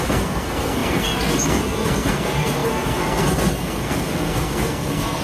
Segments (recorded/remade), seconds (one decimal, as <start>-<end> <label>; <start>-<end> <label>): 0.0-5.2 remade